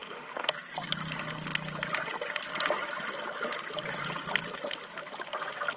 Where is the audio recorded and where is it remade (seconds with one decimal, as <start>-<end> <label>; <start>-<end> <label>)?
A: 0.0-0.7 remade; 0.7-5.8 recorded